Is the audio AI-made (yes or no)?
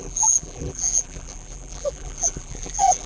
yes